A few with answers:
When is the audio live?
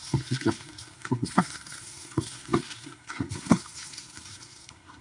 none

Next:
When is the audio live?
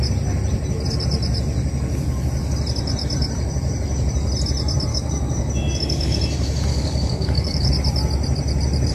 0.0-4.9; 6.2-6.7; 7.7-8.9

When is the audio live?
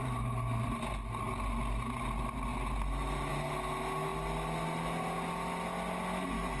0.0-6.6